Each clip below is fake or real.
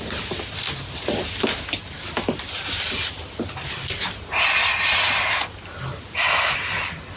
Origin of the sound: real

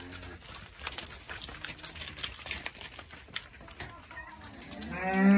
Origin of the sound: real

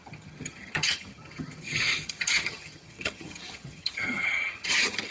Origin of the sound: fake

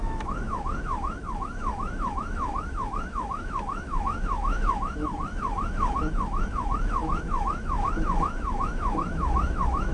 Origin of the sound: fake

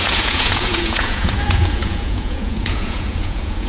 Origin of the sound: fake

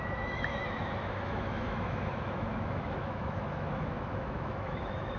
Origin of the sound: fake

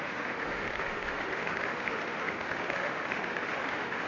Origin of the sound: fake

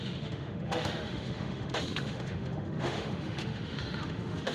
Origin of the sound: fake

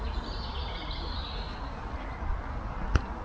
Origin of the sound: real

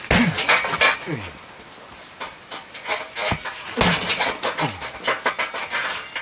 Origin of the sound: real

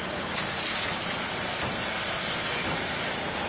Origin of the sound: real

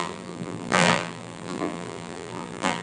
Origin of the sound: fake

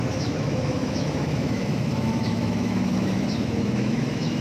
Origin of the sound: fake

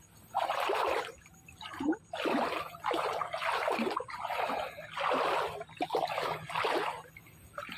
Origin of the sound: real